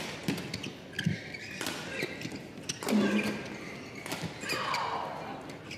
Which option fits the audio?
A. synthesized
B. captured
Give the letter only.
B